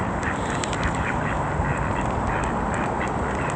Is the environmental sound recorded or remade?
remade